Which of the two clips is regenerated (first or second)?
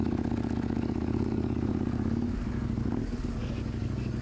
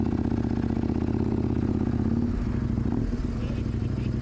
first